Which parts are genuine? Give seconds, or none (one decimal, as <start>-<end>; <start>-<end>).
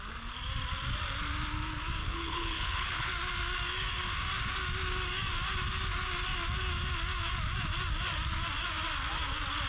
0.0-2.0; 3.1-9.7